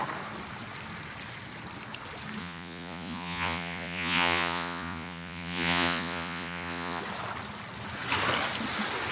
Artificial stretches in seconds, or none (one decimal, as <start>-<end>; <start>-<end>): 2.4-7.0